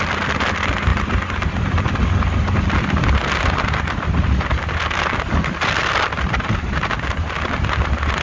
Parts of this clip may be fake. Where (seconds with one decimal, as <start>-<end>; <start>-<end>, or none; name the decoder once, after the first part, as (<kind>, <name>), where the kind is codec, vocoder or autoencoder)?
none